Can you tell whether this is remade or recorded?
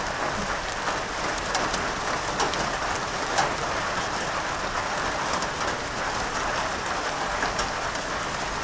recorded